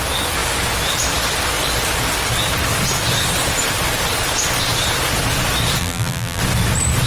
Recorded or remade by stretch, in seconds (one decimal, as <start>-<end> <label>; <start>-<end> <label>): 0.0-5.8 recorded; 5.8-6.4 remade; 6.4-7.1 recorded